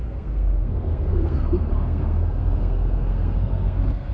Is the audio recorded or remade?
remade